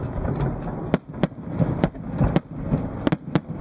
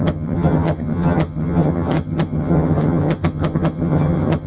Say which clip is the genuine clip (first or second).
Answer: first